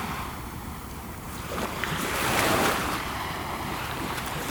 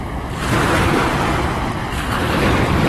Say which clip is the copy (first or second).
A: first